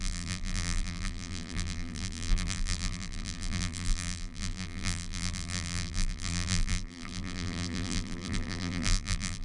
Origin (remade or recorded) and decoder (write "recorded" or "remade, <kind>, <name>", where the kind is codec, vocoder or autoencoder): remade, vocoder, BigVGAN v2